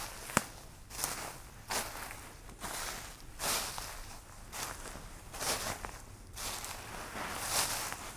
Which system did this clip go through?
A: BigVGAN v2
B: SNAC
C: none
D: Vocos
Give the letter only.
C